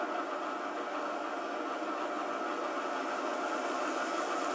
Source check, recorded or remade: recorded